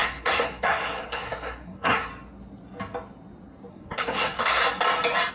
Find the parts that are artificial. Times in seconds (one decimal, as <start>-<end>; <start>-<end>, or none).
0.0-2.1; 3.7-4.6